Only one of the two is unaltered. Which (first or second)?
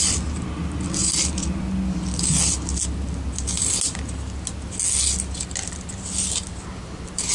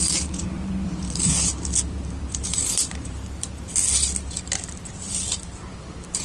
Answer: first